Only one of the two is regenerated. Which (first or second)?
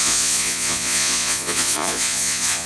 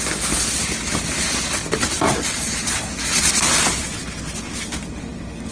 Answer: first